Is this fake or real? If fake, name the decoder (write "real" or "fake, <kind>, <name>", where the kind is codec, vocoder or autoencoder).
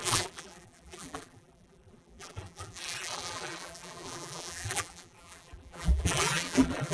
fake, vocoder, BigVGAN v2